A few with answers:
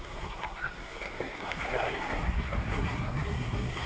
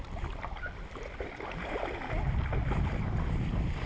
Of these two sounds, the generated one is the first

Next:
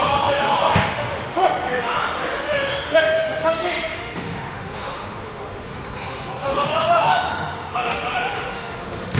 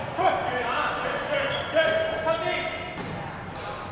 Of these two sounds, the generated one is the first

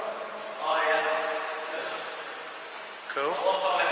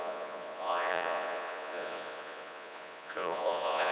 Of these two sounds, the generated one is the second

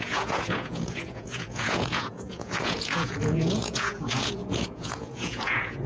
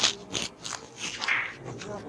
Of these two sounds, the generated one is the first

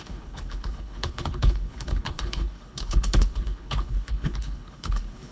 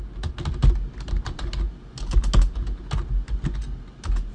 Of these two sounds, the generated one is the first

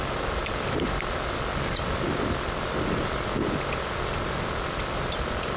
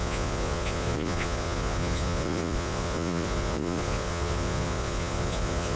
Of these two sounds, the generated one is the second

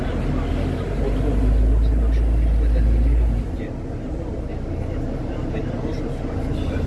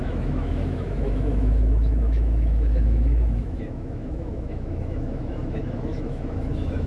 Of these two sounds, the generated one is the second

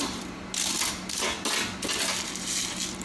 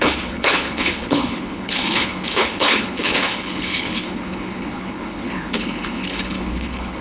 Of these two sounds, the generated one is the second